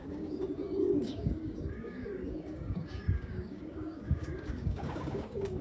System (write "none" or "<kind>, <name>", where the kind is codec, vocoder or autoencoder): codec, DAC